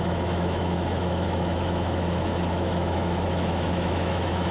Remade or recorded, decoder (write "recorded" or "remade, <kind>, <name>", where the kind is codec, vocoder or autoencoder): remade, autoencoder, DAC-VAE